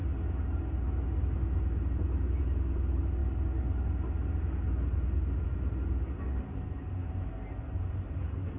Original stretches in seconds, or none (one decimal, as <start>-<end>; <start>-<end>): 0.0-8.6